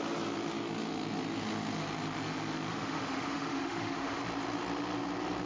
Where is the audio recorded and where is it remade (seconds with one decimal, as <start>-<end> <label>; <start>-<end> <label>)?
0.0-2.7 recorded; 2.7-4.2 remade; 4.2-5.5 recorded